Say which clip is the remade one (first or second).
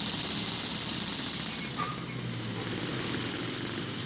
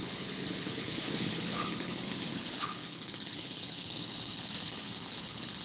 second